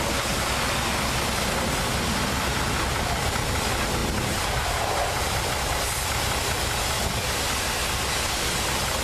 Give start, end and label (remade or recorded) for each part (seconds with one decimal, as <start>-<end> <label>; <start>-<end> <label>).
0.0-4.0 recorded; 4.0-5.5 remade; 5.5-9.0 recorded